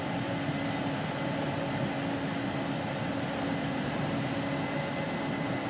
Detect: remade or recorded recorded